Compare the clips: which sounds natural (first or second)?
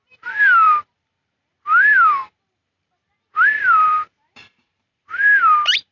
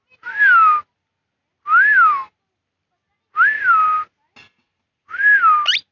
second